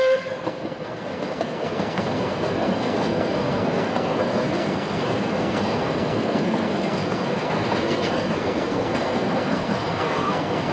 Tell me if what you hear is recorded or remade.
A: remade